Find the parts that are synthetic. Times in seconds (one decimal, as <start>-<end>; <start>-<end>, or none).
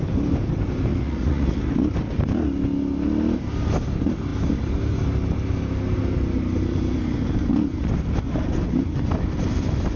0.9-1.6